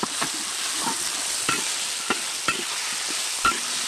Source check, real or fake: real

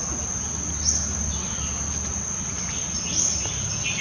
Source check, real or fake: real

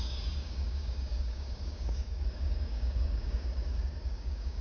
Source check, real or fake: fake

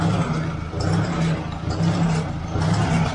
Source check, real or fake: real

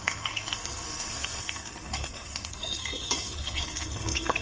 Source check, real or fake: fake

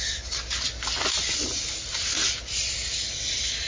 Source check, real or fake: real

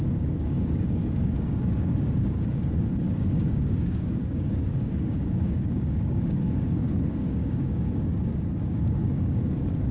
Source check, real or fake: fake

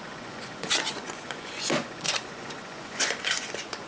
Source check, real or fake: fake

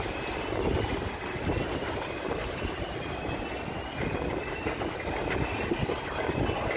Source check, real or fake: real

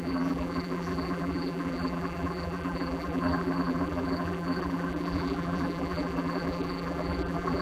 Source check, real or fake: fake